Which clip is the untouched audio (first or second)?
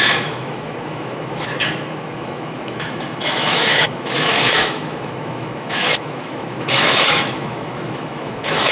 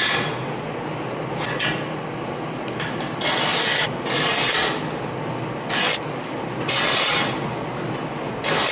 second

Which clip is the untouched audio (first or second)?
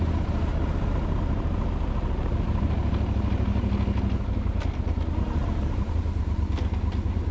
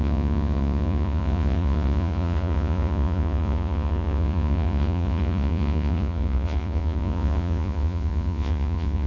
first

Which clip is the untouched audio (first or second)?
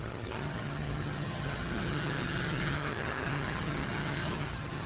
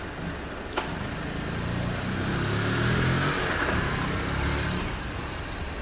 second